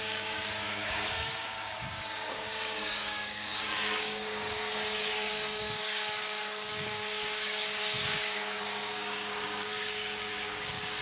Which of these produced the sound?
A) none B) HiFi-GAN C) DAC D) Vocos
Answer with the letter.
C